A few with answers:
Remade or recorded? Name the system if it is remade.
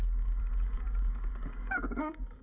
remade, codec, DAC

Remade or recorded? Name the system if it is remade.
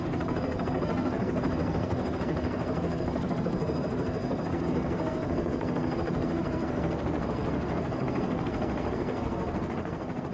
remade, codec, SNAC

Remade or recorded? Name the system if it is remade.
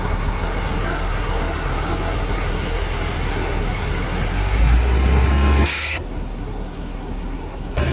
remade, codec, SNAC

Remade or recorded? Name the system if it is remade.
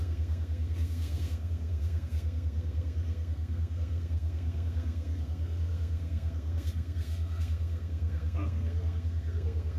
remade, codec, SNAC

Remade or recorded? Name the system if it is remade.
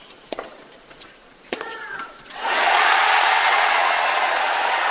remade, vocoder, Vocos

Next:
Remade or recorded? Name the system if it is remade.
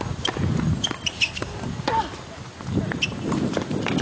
recorded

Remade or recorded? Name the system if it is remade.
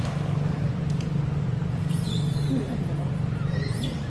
recorded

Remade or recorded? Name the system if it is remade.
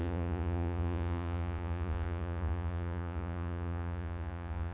remade, vocoder, Vocos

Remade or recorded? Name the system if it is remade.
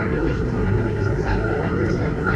remade, codec, SNAC